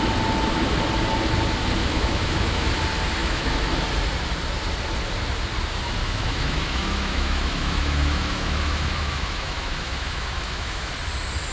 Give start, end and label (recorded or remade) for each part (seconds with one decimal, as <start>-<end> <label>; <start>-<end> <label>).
0.0-1.8 recorded; 1.8-2.7 remade; 2.7-3.2 recorded; 3.2-3.8 remade; 3.8-6.0 recorded; 6.0-10.9 remade; 10.9-11.5 recorded